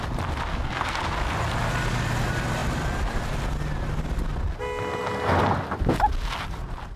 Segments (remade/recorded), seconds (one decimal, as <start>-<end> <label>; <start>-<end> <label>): 0.0-0.5 recorded; 0.5-1.0 remade; 1.0-7.0 recorded